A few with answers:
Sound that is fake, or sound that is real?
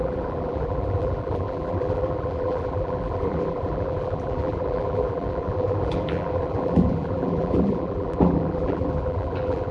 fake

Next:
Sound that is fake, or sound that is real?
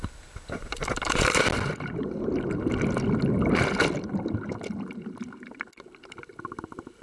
real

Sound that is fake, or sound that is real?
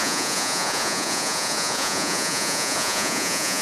fake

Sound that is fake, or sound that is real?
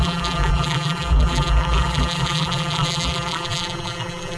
fake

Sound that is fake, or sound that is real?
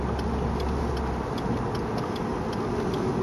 real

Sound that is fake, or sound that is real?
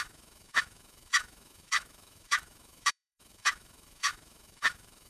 fake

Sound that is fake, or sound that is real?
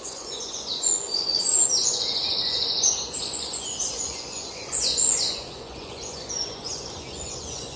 fake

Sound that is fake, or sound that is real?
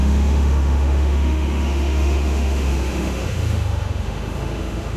fake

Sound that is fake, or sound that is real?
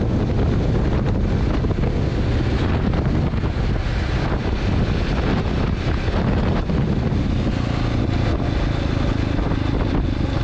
real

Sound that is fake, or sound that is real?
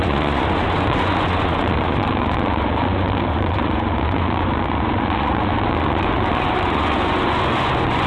fake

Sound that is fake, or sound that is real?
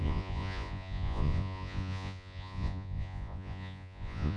fake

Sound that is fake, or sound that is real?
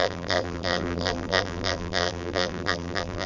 fake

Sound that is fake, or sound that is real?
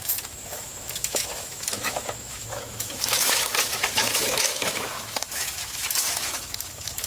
fake